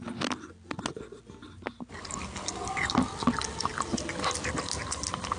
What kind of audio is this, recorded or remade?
recorded